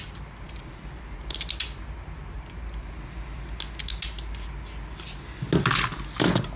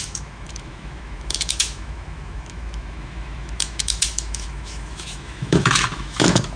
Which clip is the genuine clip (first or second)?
first